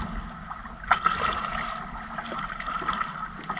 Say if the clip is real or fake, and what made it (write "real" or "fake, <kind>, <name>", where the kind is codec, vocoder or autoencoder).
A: real